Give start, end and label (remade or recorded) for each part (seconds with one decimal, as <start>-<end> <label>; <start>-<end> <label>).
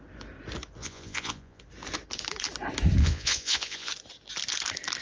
0.0-0.8 recorded; 0.8-1.6 remade; 1.6-3.0 recorded; 3.0-3.9 remade; 3.9-5.0 recorded